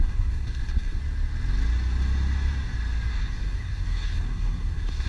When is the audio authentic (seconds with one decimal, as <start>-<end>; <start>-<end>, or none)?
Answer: 1.0-3.1